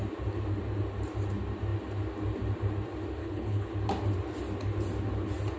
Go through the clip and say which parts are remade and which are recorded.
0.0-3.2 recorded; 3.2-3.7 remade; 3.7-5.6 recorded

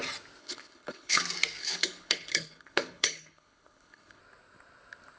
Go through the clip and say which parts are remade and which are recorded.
0.0-0.4 recorded; 0.4-1.2 remade; 1.2-1.6 recorded; 1.6-4.2 remade; 4.2-5.2 recorded

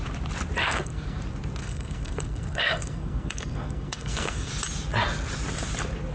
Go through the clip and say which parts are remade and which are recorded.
0.0-0.6 recorded; 0.6-1.2 remade; 1.2-1.6 recorded; 1.6-4.5 remade; 4.5-6.1 recorded

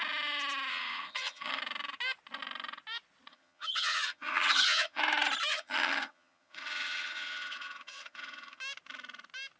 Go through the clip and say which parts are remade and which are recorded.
0.0-0.7 recorded; 0.7-1.6 remade; 1.6-3.3 recorded; 3.3-5.0 remade; 5.0-5.5 recorded; 5.5-8.6 remade; 8.6-9.6 recorded

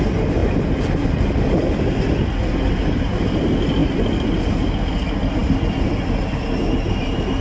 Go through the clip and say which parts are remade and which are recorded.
0.0-7.4 recorded

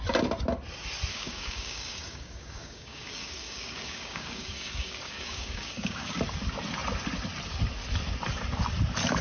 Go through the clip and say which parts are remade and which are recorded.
0.0-1.1 recorded; 1.1-6.2 remade; 6.2-9.2 recorded

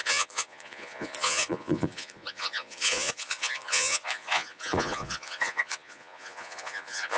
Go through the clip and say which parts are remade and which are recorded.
0.0-7.2 remade